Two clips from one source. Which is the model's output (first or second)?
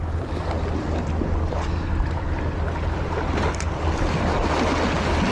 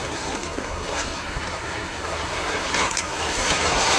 second